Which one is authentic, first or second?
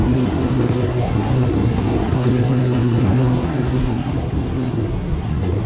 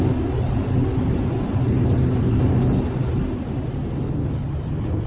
second